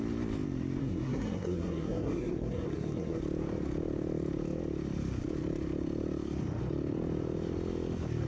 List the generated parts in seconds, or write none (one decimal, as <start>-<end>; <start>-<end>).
0.8-3.2